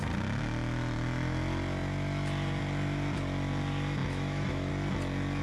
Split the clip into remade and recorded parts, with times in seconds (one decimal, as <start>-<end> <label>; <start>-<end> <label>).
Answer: 0.0-4.0 recorded; 4.0-4.7 remade; 4.7-5.4 recorded